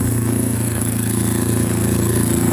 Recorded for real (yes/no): no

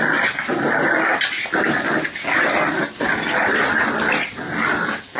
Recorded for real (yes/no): yes